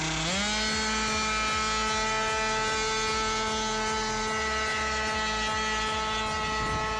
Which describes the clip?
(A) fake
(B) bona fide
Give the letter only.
B